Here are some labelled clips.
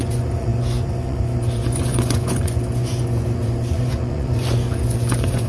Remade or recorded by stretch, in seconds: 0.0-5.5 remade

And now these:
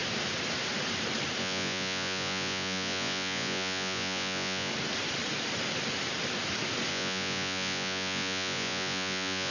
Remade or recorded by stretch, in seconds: 0.0-1.4 recorded; 1.4-4.7 remade; 4.7-6.9 recorded; 6.9-9.5 remade

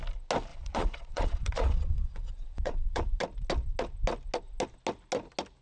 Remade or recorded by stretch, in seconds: 0.0-0.5 recorded; 0.5-3.2 remade; 3.2-5.6 recorded

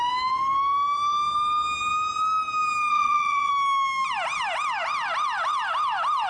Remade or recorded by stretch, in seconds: 0.0-2.9 recorded; 2.9-3.5 remade; 3.5-6.3 recorded

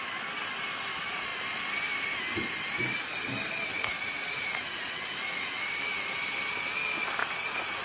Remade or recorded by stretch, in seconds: 0.0-3.7 recorded; 3.7-4.9 remade; 4.9-7.2 recorded; 7.2-7.8 remade